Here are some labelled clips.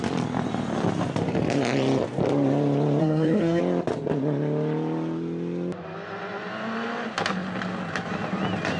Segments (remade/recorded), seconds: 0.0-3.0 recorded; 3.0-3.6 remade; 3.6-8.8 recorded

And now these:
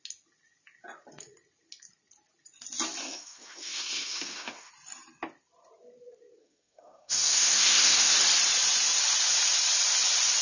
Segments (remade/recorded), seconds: 0.0-3.0 recorded; 3.0-4.7 remade; 4.7-6.4 recorded; 6.4-8.1 remade; 8.1-10.4 recorded

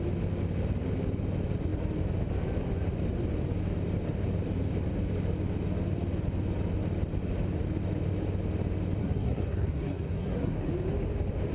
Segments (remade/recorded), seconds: 0.0-9.0 recorded; 9.0-10.7 remade; 10.7-11.5 recorded